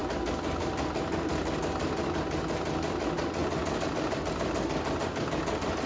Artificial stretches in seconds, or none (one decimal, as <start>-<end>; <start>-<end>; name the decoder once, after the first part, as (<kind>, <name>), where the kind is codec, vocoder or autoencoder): none